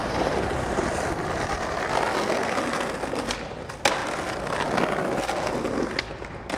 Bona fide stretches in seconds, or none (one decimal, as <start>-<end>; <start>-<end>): 0.9-6.6